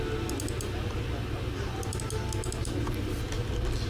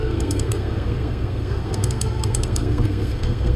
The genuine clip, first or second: first